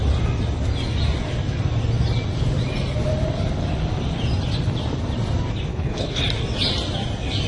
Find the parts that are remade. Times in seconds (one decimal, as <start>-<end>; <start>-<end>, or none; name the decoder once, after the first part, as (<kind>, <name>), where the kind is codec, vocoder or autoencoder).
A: 5.7-6.2 (codec, HILCodec)